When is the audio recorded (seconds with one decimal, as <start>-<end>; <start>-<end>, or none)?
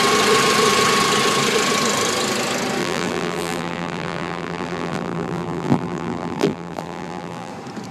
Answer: 0.0-2.8; 7.5-7.9